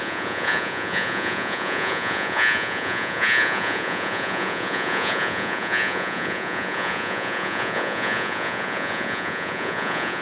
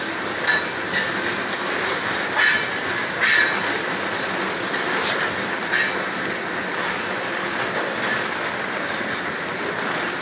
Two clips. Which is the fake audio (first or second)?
first